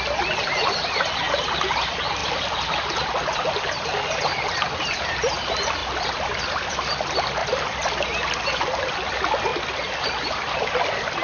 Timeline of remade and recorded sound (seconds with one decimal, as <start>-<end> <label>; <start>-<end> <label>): 0.0-2.2 recorded; 2.2-2.9 remade; 2.9-5.8 recorded; 5.8-6.7 remade; 6.7-7.4 recorded; 7.4-7.9 remade; 7.9-11.2 recorded